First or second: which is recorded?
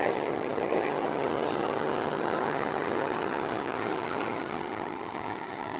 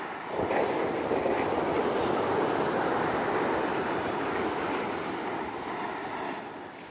second